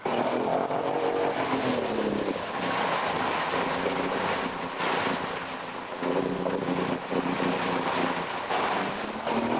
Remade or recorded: recorded